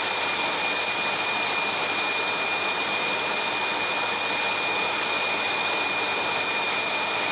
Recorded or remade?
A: recorded